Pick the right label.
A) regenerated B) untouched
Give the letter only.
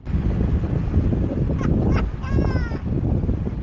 B